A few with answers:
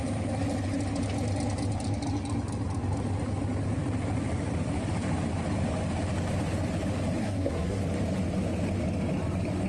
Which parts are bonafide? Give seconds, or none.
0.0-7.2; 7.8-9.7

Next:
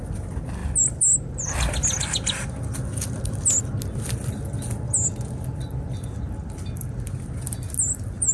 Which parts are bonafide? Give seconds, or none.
0.0-8.3

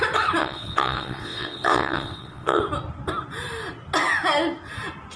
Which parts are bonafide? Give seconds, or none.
0.0-0.4; 2.6-5.2

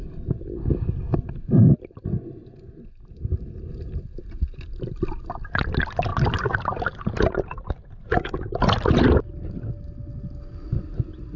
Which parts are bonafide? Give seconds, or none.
0.0-11.4

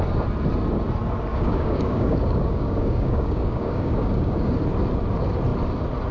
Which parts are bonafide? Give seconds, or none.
0.0-1.3; 4.6-6.1